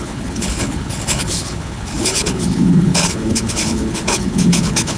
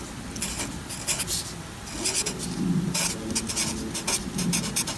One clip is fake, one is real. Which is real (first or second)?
second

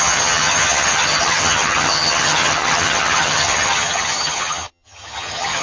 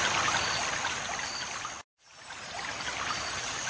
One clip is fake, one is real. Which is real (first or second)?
second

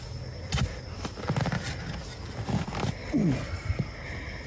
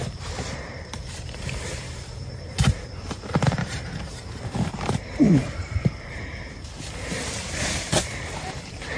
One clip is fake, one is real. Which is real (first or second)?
first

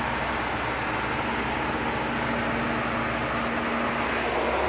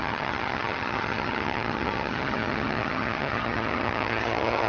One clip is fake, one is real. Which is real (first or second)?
first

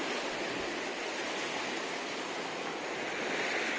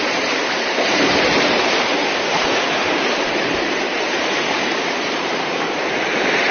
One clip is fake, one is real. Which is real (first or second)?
first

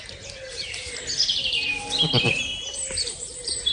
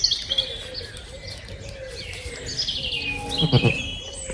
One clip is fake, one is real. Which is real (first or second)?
second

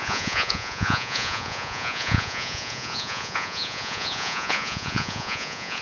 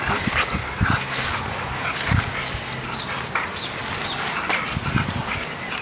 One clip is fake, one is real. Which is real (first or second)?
second